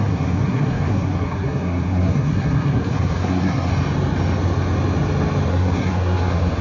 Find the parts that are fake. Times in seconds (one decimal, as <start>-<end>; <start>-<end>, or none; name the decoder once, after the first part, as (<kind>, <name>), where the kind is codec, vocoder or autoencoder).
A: 0.0-3.7 (codec, SNAC); 5.5-6.6